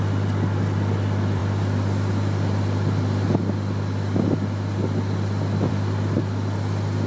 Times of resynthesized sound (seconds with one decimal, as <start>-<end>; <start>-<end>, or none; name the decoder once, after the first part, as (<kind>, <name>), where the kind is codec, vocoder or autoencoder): none